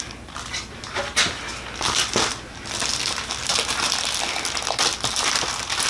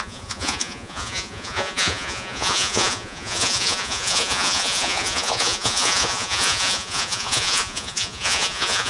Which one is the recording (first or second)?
first